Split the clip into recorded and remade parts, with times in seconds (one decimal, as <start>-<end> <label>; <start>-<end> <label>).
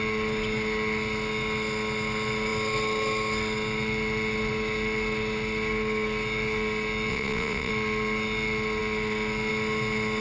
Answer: 0.0-7.1 recorded; 7.1-7.7 remade; 7.7-10.2 recorded